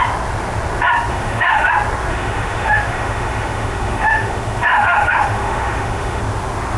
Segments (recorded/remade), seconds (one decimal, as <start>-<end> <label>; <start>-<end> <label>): 0.0-1.1 recorded; 1.1-1.7 remade; 1.7-2.1 recorded; 2.1-6.2 remade; 6.2-6.8 recorded